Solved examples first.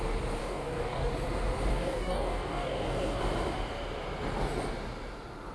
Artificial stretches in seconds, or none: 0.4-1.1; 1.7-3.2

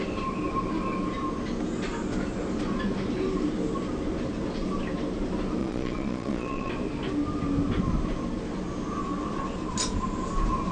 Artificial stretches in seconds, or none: 5.6-6.7

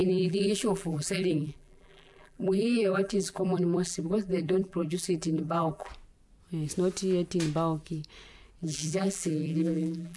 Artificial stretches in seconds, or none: 0.0-5.9; 8.6-10.2